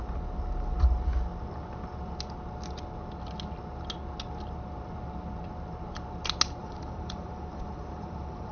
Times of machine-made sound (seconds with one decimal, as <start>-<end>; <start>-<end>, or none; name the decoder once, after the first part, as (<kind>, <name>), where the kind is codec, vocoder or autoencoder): 6.6-8.5 (vocoder, BigVGAN v2)